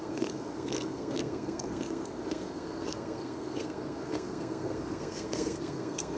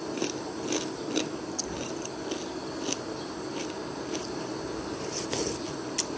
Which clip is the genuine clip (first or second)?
second